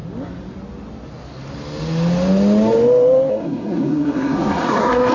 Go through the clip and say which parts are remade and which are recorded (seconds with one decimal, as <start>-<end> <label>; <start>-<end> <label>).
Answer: 0.0-3.3 recorded; 3.3-5.1 remade